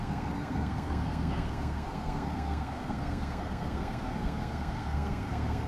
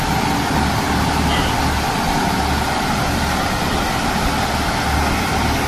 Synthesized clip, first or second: first